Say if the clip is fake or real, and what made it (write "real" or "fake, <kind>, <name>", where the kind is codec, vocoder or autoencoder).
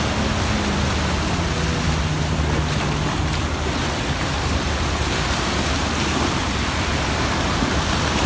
real